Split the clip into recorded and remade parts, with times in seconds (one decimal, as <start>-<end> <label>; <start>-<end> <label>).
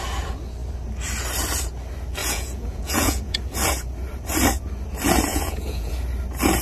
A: 0.0-2.2 recorded; 2.2-3.4 remade; 3.4-5.3 recorded; 5.3-5.9 remade; 5.9-6.6 recorded